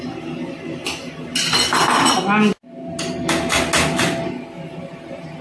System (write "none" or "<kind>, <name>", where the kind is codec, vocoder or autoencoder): none